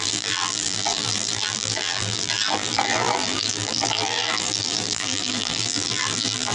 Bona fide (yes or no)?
no